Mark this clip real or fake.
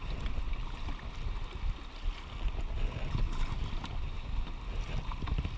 real